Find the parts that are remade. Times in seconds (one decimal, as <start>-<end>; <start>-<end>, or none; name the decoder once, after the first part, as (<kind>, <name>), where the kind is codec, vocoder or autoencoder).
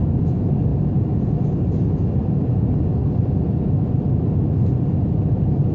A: none